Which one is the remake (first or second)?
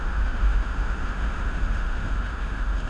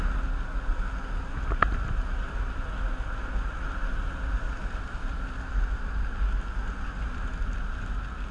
first